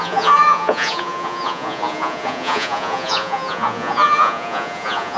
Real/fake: fake